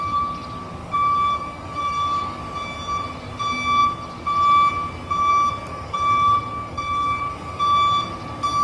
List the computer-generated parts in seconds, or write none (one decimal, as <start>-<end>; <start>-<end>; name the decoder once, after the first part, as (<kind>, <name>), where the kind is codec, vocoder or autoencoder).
0.8-2.4 (codec, DAC); 5.7-7.6